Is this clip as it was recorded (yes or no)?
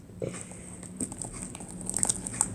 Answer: yes